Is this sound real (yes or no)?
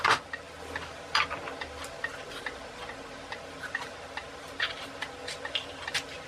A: no